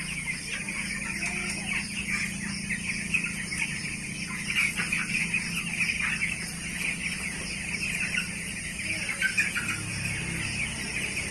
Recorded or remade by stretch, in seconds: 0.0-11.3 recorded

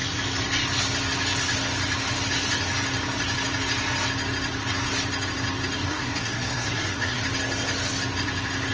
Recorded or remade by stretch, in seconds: 0.0-5.8 recorded; 5.8-7.2 remade; 7.2-8.7 recorded

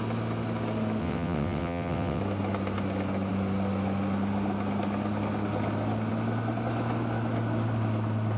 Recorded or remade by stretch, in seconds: 0.0-1.0 recorded; 1.0-2.2 remade; 2.2-8.4 recorded